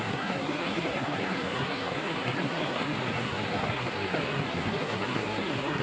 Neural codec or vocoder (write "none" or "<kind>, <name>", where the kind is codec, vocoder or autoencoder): codec, SNAC